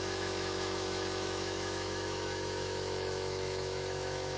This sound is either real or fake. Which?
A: fake